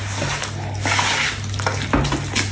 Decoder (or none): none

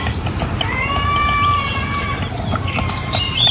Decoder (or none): vocoder, BigVGAN v2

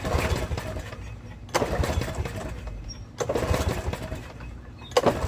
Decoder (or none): none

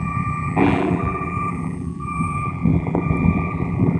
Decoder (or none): vocoder, BigVGAN v2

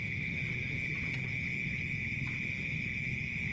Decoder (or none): none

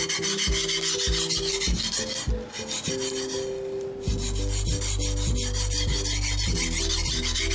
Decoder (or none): none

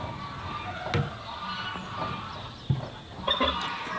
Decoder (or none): none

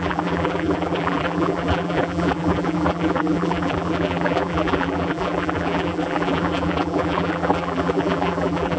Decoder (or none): vocoder, BigVGAN v2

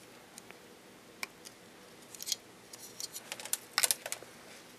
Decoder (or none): none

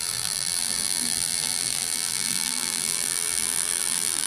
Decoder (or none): vocoder, BigVGAN v2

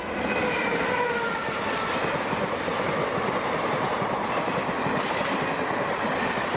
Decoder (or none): none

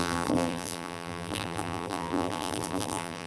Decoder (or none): vocoder, BigVGAN v2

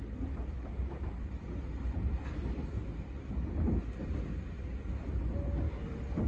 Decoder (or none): vocoder, BigVGAN v2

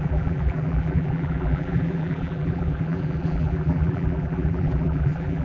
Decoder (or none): vocoder, BigVGAN v2